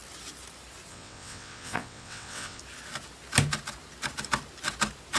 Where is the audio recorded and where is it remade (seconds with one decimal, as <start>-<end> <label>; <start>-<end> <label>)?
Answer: 0.0-0.9 recorded; 0.9-2.6 remade; 2.6-5.2 recorded